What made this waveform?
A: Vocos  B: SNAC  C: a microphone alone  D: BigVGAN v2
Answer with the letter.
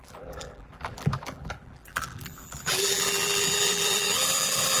D